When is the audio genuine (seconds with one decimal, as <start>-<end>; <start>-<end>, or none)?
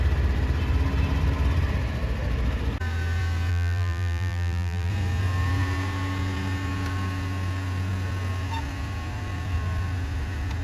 0.0-3.5; 4.9-10.6